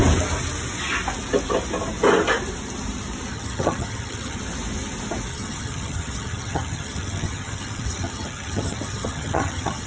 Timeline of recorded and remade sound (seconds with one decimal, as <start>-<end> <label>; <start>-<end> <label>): 0.0-3.3 recorded; 3.3-4.4 remade; 4.4-5.3 recorded; 5.3-9.9 remade